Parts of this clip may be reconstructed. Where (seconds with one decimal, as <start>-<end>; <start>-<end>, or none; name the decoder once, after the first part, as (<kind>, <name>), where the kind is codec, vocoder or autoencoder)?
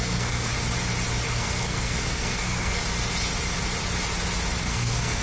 0.0-0.5 (codec, SNAC); 1.3-2.8; 4.6-5.2